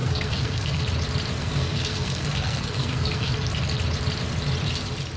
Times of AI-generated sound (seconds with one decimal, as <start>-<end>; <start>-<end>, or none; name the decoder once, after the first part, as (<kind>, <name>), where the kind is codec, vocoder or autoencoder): 0.0-0.8 (codec, SNAC); 1.4-3.3